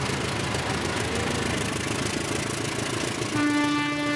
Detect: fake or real real